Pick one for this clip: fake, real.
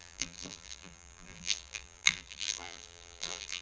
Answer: fake